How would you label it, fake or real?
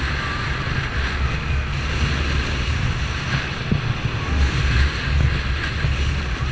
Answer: real